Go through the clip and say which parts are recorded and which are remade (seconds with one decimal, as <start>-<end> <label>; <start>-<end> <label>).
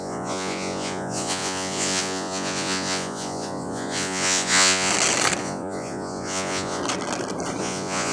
0.0-4.9 remade; 4.9-5.4 recorded; 5.4-6.8 remade; 6.8-7.6 recorded; 7.6-8.1 remade